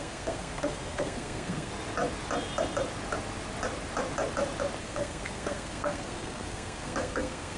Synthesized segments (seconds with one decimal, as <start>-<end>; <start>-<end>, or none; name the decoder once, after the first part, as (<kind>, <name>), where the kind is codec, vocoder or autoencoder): 0.0-1.7 (codec, SNAC); 4.8-7.6